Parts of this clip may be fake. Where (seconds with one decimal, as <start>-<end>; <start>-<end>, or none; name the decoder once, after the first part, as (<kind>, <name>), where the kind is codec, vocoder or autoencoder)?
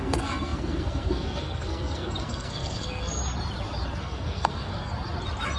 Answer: 0.0-3.2 (codec, SNAC); 4.0-4.9